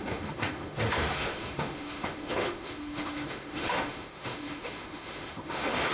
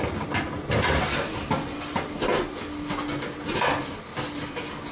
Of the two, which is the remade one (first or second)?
first